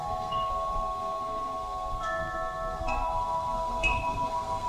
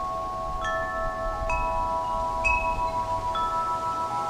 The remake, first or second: first